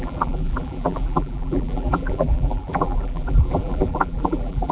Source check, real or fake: fake